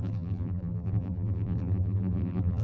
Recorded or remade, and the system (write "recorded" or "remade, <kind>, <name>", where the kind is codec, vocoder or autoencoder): remade, vocoder, BigVGAN v2